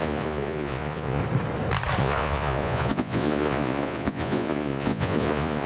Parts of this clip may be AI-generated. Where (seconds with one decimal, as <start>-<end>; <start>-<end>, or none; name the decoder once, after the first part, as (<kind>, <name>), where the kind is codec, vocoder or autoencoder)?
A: 0.0-1.2 (vocoder, Vocos); 2.0-5.7